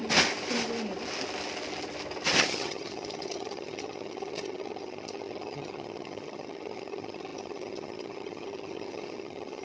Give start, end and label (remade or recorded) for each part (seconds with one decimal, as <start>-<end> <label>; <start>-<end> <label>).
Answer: 0.0-2.4 recorded; 2.4-9.6 remade

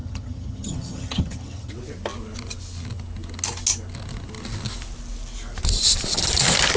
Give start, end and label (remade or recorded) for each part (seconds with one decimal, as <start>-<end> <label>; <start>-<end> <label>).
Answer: 0.0-1.7 remade; 1.7-6.8 recorded

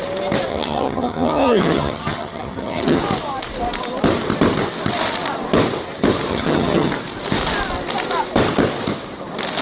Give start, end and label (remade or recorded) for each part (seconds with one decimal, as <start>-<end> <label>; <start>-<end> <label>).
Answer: 0.0-0.5 recorded; 0.5-3.0 remade; 3.0-6.3 recorded; 6.3-6.9 remade; 6.9-9.6 recorded

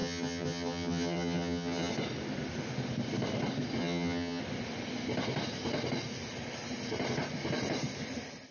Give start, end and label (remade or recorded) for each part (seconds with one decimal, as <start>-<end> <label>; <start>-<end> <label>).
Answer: 0.0-1.9 remade; 1.9-3.8 recorded; 3.8-4.4 remade; 4.4-8.5 recorded

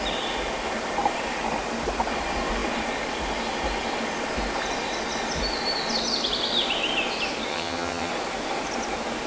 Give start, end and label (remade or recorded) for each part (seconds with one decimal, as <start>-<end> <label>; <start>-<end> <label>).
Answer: 0.0-7.5 recorded; 7.5-8.1 remade; 8.1-9.3 recorded

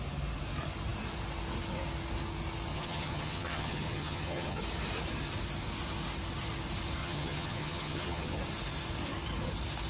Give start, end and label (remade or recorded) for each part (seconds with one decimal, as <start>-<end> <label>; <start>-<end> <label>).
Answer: 0.0-2.7 recorded; 2.7-4.6 remade; 4.6-7.0 recorded; 7.0-8.4 remade; 8.4-9.9 recorded

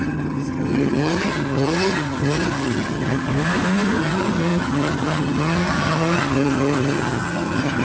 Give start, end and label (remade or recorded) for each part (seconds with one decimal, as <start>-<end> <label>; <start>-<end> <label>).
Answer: 0.0-3.3 remade; 3.3-4.0 recorded; 4.0-7.8 remade